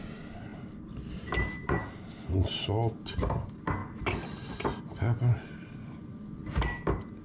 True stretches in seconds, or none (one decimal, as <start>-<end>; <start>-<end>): 0.0-0.5; 2.1-7.2